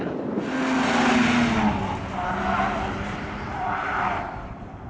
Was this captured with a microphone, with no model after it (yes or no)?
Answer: yes